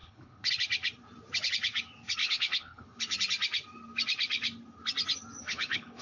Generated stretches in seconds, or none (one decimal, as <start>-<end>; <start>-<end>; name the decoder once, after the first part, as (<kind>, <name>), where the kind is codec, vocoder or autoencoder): 0.0-0.5 (codec, HILCodec); 2.2-3.0; 5.5-6.0